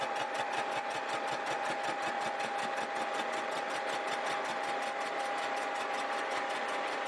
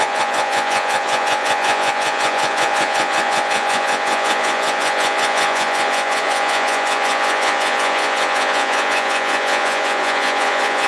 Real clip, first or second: first